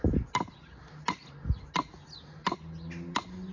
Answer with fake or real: real